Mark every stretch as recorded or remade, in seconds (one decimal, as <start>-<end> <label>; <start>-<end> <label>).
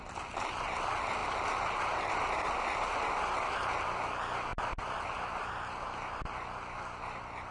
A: 0.0-7.5 recorded